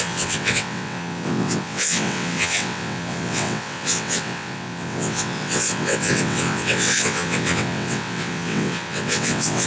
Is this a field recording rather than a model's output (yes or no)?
no